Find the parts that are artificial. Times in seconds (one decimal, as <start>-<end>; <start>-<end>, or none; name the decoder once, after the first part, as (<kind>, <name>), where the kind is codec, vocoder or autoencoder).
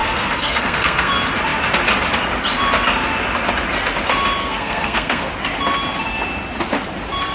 0.0-1.1 (codec, SNAC); 4.4-5.3